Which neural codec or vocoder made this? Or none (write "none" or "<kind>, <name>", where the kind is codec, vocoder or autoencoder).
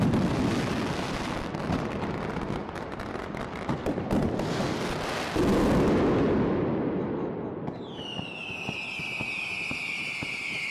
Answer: none